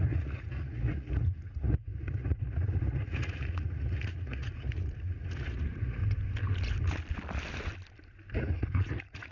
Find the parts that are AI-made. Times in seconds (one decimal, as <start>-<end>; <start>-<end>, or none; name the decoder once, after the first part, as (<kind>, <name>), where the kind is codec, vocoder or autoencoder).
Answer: 0.0-6.0 (vocoder, Vocos); 8.4-9.3